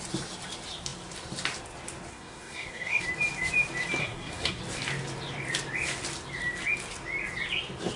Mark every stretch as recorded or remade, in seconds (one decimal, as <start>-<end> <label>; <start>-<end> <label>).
0.0-2.1 recorded; 2.1-3.0 remade; 3.0-4.0 recorded; 4.0-4.6 remade; 4.6-8.0 recorded